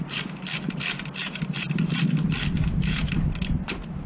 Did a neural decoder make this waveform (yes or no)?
no